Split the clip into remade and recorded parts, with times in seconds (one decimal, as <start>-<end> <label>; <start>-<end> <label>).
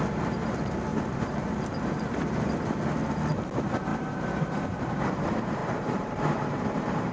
0.0-0.9 recorded; 0.9-2.5 remade; 2.5-3.9 recorded; 3.9-4.6 remade; 4.6-5.6 recorded; 5.6-7.1 remade